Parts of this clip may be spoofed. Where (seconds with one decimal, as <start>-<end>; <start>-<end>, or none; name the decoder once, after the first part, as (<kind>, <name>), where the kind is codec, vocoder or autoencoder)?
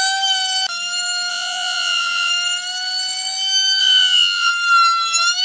1.3-2.3 (vocoder, Vocos); 3.8-4.5